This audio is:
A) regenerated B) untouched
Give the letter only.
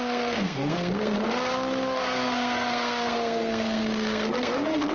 A